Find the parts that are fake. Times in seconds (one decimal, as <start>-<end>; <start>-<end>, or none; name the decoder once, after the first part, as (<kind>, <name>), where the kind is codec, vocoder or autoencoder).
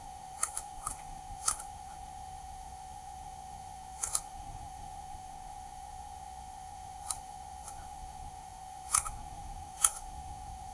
0.0-10.7 (autoencoder, DAC-VAE)